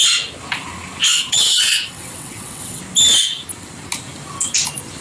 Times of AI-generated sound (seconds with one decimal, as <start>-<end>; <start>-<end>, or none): 1.1-2.8